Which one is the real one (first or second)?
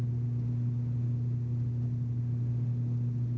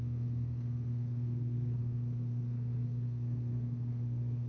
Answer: first